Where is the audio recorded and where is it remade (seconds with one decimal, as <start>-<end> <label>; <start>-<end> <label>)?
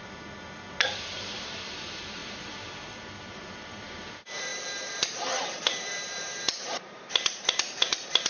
0.0-8.3 remade